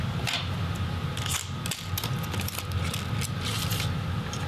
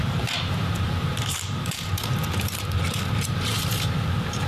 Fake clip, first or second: second